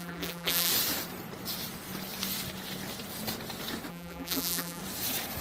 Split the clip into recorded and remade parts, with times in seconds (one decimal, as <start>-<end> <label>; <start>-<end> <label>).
0.0-0.7 remade; 0.7-3.9 recorded; 3.9-4.8 remade; 4.8-5.4 recorded